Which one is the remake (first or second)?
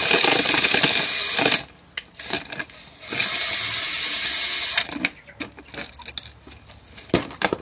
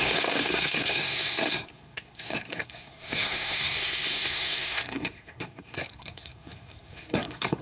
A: second